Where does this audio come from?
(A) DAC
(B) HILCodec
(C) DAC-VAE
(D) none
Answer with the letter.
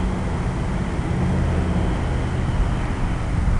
D